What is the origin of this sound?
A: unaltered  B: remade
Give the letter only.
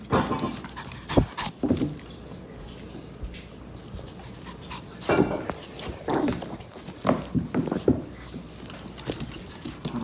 A